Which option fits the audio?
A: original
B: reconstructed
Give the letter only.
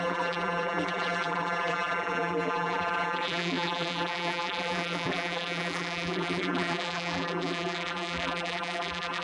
B